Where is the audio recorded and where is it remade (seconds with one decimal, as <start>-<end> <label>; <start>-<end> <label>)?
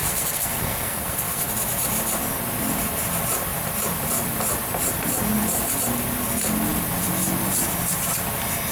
0.0-1.5 remade; 1.5-8.7 recorded